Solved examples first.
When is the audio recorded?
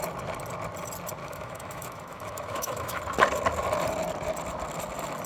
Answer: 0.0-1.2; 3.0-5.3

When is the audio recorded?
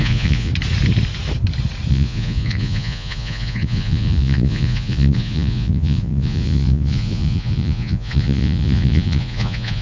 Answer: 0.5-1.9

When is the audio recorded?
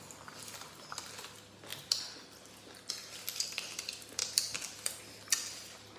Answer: 0.0-6.0